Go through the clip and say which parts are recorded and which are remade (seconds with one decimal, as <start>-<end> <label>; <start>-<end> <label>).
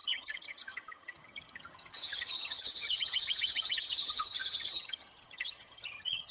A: 0.0-6.3 remade